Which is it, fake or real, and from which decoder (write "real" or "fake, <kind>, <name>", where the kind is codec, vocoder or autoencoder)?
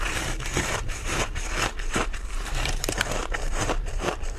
fake, vocoder, BigVGAN v2